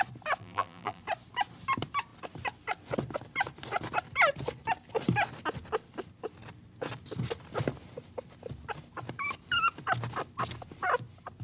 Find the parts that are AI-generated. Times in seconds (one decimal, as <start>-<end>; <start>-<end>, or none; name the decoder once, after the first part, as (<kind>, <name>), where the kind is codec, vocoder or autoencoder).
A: 0.4-1.0 (vocoder, BigVGAN v2)